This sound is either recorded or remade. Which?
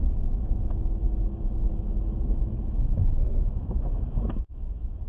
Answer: remade